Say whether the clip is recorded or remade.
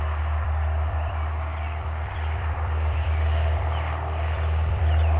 remade